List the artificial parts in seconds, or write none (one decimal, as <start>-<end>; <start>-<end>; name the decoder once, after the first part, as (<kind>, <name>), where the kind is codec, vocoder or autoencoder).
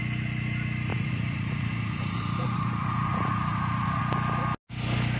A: 0.9-4.0 (vocoder, Vocos)